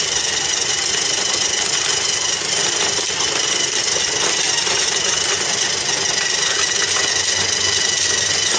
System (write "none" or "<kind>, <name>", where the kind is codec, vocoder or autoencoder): none